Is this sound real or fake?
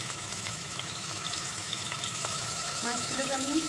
fake